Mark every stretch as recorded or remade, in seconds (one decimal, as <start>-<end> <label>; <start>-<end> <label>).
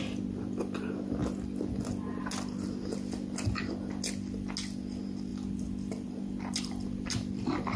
0.0-5.3 recorded; 5.3-7.1 remade; 7.1-7.8 recorded